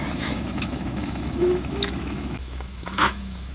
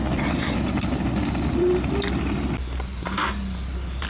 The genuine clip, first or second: second